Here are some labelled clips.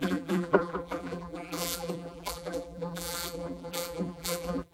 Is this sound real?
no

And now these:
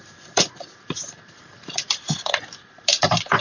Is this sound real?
no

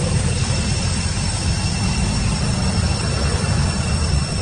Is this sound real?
no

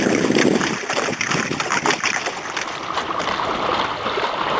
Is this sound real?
no